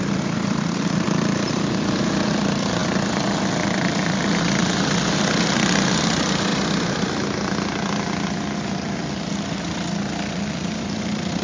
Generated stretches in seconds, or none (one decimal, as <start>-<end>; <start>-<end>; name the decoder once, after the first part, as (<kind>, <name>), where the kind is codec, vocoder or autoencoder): 0.0-2.8 (vocoder, BigVGAN v2); 4.4-6.5; 10.5-11.4